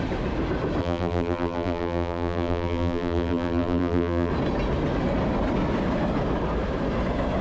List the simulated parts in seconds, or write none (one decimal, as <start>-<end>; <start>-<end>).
0.8-4.3